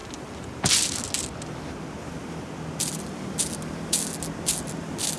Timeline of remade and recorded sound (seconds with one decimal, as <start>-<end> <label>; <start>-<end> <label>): 0.0-5.2 recorded